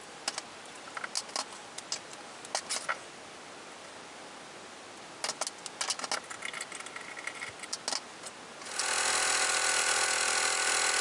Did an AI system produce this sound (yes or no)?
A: no